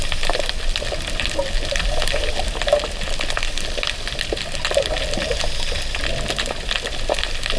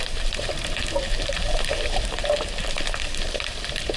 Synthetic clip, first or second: second